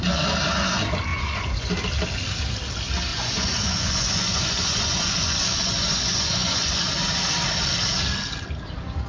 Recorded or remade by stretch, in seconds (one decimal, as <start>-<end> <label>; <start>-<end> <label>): 0.0-1.1 recorded; 1.1-1.7 remade; 1.7-3.1 recorded; 3.1-6.9 remade; 6.9-9.1 recorded